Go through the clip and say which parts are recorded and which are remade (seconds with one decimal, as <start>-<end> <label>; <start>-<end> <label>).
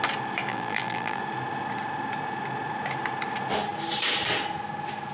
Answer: 0.0-0.5 recorded; 0.5-1.2 remade; 1.2-5.1 recorded